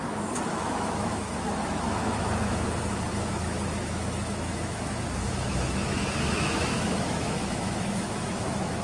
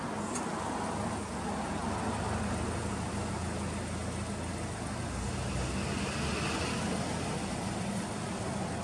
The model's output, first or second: first